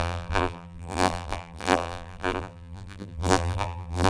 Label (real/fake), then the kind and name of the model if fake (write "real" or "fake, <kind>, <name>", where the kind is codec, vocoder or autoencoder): fake, vocoder, BigVGAN v2